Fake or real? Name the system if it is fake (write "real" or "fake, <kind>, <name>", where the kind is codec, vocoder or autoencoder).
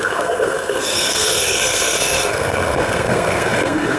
fake, codec, SNAC